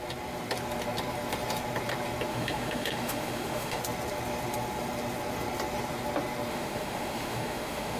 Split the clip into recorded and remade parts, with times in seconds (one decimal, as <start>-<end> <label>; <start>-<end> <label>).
0.0-2.3 recorded; 2.3-3.8 remade; 3.8-6.5 recorded; 6.5-8.0 remade